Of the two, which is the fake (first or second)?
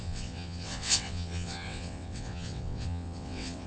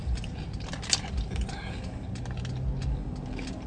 first